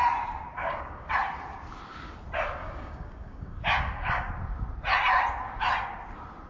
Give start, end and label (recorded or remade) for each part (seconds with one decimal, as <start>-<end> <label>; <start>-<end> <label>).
0.0-0.6 recorded; 0.6-1.1 remade; 1.1-2.6 recorded; 2.6-4.3 remade; 4.3-6.5 recorded